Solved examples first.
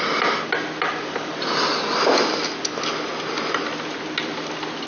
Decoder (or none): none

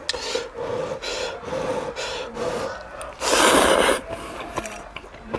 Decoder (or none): none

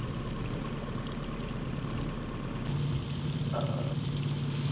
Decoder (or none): none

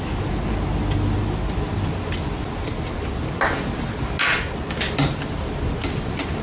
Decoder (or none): none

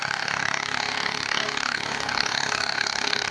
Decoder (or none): codec, DAC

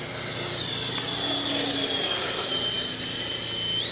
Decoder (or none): none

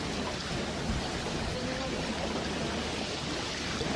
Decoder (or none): none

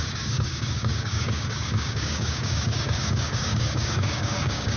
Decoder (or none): codec, DAC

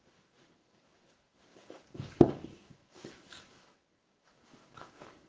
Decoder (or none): codec, DAC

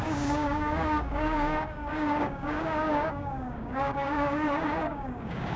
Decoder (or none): codec, DAC